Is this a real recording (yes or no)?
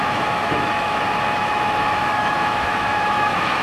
no